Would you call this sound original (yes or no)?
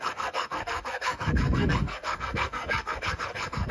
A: no